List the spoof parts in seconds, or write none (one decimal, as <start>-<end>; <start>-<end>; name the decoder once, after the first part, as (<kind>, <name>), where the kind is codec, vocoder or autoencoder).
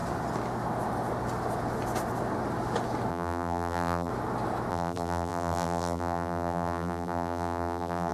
3.1-4.1 (vocoder, BigVGAN v2); 4.7-8.1